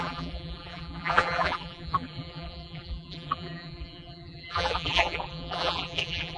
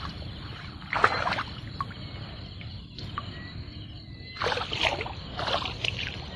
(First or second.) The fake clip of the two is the first